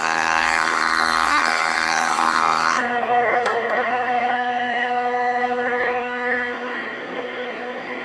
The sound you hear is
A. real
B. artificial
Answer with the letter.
B